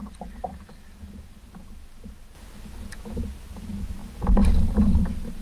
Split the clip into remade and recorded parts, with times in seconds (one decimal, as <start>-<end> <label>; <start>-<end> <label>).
0.0-0.5 remade; 0.5-5.4 recorded